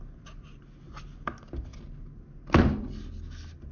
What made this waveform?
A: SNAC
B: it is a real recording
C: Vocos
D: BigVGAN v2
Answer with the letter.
B